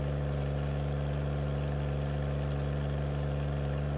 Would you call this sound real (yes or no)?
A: no